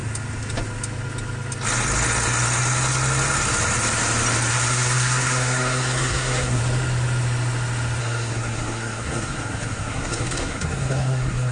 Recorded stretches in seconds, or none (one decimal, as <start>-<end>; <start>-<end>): 0.0-4.5; 6.6-8.0